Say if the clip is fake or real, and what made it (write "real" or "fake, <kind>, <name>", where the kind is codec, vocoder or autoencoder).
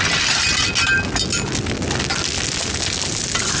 real